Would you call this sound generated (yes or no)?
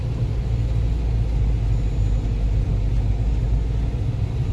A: no